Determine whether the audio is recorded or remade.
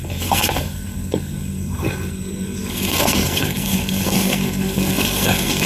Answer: remade